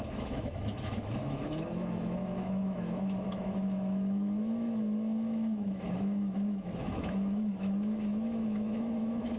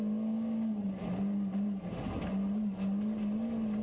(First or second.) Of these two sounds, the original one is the second